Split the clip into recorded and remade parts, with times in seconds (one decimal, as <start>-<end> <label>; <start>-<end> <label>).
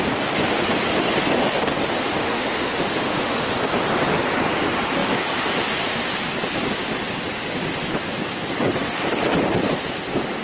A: 0.0-2.2 recorded; 2.2-3.5 remade; 3.5-10.4 recorded